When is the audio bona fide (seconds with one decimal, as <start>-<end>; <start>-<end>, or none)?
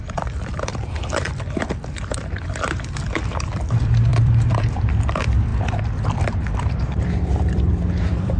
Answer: none